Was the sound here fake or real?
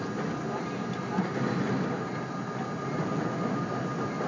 real